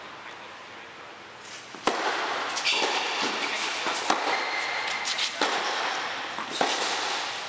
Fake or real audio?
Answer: real